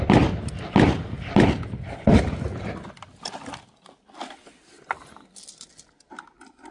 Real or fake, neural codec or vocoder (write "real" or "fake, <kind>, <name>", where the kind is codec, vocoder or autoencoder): real